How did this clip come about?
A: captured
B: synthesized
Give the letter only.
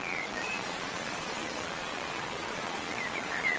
B